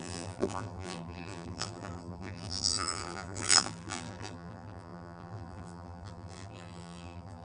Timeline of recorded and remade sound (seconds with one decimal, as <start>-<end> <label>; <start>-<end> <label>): 0.0-7.4 remade